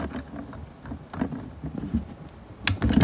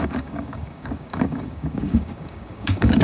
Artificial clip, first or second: second